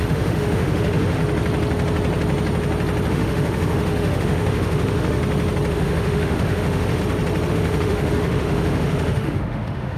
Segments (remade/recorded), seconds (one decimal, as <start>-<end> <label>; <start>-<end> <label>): 0.0-1.2 remade; 1.2-3.1 recorded; 3.1-5.2 remade; 5.2-5.7 recorded; 5.7-7.0 remade; 7.0-7.5 recorded; 7.5-10.0 remade